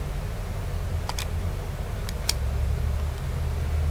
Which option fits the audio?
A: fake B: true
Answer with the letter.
B